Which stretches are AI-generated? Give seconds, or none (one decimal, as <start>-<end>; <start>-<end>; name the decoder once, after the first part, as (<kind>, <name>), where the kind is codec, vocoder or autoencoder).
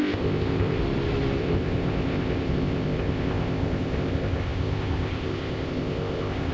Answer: 0.0-0.8 (codec, ZipCodec); 1.4-6.5